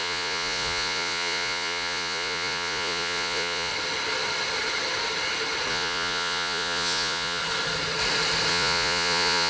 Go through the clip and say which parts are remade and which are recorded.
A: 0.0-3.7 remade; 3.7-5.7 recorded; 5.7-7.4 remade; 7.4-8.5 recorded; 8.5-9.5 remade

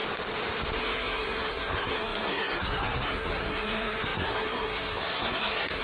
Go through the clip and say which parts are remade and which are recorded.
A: 0.0-0.8 recorded; 0.8-5.8 remade

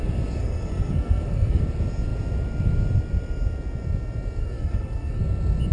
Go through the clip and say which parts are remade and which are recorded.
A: 0.0-0.4 recorded; 0.4-1.6 remade; 1.6-4.4 recorded; 4.4-5.2 remade; 5.2-5.7 recorded

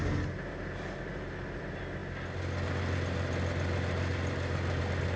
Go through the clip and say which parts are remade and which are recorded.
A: 0.0-5.2 recorded

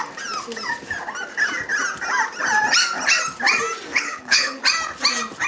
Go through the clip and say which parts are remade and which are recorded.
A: 0.0-3.9 recorded; 3.9-4.6 remade; 4.6-5.5 recorded

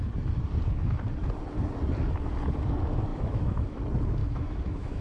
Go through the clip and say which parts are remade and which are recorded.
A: 0.0-3.1 recorded; 3.1-3.8 remade; 3.8-4.2 recorded; 4.2-5.0 remade